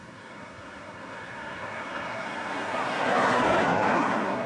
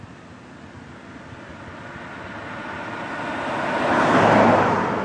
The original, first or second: second